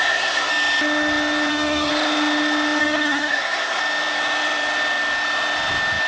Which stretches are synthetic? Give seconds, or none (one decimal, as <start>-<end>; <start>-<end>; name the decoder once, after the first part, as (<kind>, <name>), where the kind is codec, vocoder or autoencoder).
0.0-0.5 (codec, SNAC); 1.5-1.9; 2.8-3.8